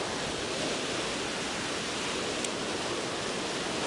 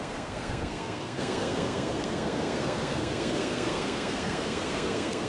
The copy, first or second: second